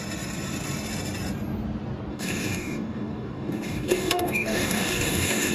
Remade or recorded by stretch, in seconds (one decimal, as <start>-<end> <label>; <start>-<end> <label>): 0.0-2.1 recorded; 2.1-5.5 remade